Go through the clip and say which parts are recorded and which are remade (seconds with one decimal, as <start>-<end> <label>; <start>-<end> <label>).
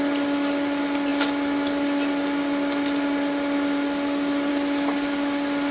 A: 0.0-5.7 recorded